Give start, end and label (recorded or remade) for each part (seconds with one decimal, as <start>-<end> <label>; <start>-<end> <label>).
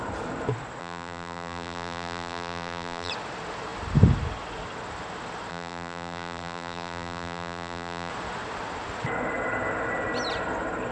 0.0-0.8 recorded; 0.8-3.1 remade; 3.1-5.5 recorded; 5.5-8.1 remade; 8.1-10.9 recorded